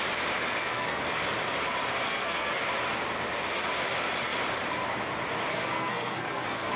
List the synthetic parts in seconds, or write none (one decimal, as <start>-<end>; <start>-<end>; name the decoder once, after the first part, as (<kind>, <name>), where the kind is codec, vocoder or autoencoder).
0.4-1.0 (codec, SNAC); 2.0-2.6; 5.5-6.8

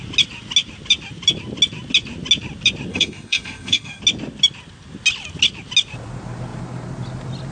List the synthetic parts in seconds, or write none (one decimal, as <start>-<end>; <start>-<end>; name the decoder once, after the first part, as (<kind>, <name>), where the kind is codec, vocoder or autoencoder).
2.9-4.0 (codec, SNAC)

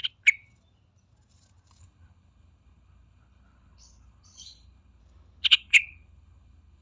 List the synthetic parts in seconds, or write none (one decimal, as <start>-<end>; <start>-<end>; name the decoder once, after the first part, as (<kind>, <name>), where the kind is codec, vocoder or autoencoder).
1.8-5.0 (codec, HILCodec); 5.5-6.8

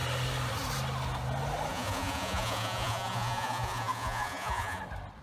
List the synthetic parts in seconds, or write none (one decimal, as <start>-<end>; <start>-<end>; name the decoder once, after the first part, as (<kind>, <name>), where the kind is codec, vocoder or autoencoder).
1.7-4.8 (vocoder, Vocos)

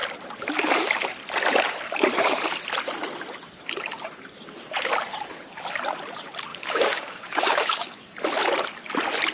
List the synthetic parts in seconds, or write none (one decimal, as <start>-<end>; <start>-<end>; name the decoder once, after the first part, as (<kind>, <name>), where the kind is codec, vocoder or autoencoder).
6.5-8.0 (codec, DAC)

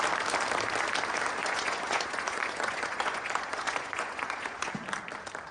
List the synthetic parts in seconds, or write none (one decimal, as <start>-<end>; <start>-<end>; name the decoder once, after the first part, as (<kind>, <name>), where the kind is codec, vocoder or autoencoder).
1.4-4.7 (vocoder, Vocos)